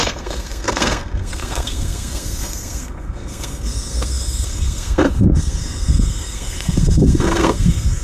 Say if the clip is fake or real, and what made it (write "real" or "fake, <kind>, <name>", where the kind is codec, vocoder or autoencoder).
fake, codec, SNAC